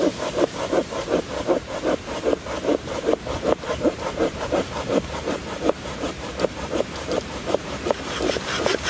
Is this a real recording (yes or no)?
no